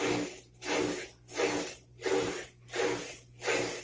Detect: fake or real real